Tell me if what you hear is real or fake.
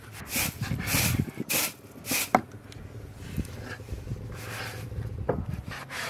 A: real